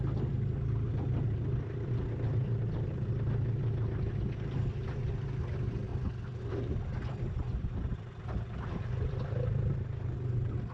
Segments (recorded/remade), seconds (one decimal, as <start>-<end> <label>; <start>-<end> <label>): 0.0-5.9 remade; 5.9-6.4 recorded; 6.4-10.7 remade